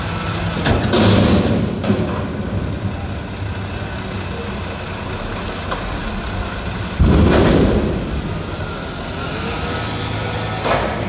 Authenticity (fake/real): real